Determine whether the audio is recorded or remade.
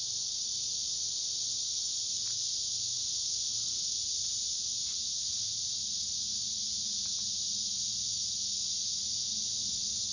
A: recorded